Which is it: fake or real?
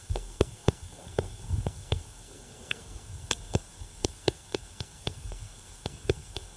fake